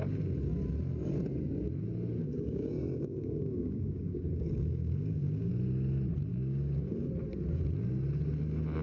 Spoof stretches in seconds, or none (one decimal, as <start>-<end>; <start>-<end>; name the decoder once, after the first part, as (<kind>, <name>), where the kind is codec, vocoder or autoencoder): 2.2-5.5 (codec, DAC); 6.3-7.1